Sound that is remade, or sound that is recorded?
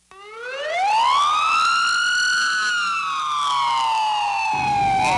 recorded